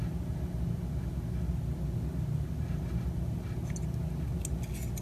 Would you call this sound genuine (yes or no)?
yes